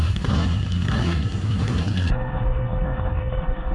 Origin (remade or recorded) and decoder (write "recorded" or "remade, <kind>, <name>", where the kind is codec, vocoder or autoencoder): remade, codec, SNAC